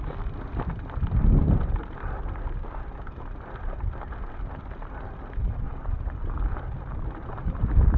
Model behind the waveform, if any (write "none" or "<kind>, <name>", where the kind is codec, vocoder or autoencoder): none